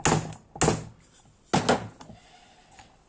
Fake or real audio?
real